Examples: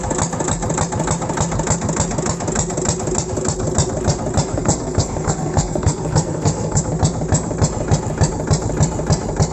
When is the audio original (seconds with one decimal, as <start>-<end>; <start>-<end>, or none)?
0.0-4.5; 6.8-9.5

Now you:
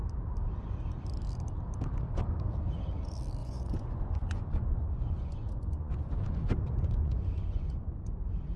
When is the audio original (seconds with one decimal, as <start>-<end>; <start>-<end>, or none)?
0.0-3.4; 8.2-8.6

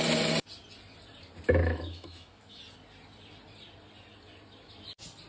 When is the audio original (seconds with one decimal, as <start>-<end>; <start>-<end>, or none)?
0.0-1.6; 2.6-5.3

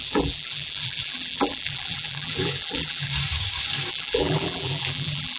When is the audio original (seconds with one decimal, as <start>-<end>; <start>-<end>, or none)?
3.1-3.9

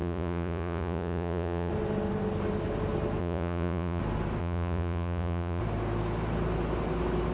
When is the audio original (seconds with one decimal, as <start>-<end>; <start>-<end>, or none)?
1.7-3.2; 4.0-4.4; 5.6-7.3